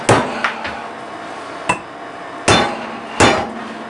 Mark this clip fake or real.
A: real